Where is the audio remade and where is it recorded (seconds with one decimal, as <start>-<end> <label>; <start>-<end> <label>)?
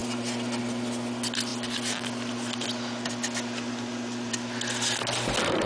0.0-5.7 recorded